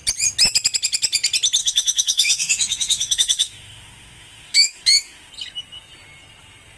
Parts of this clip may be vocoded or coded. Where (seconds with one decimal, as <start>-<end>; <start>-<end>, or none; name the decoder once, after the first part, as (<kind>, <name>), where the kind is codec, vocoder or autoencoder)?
1.6-5.3 (autoencoder, DAC-VAE)